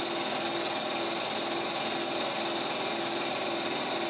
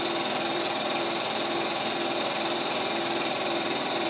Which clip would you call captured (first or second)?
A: first